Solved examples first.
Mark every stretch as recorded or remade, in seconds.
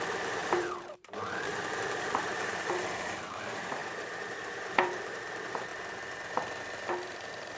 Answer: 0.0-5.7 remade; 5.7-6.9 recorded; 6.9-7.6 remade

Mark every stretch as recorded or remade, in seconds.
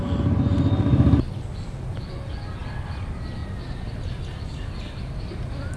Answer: 0.0-5.8 recorded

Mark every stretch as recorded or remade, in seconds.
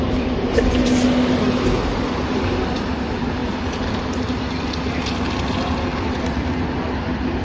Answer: 0.0-3.4 recorded; 3.4-4.0 remade; 4.0-5.9 recorded; 5.9-6.4 remade; 6.4-7.4 recorded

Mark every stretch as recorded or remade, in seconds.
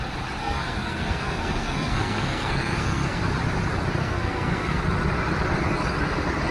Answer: 0.0-0.4 recorded; 0.4-3.2 remade; 3.2-4.0 recorded; 4.0-4.8 remade; 4.8-6.5 recorded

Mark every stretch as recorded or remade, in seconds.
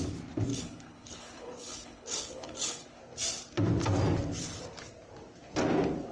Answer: 0.0-0.5 recorded; 0.5-3.0 remade; 3.0-6.1 recorded